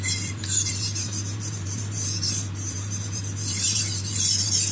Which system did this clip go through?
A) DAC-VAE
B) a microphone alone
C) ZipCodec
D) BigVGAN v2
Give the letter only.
D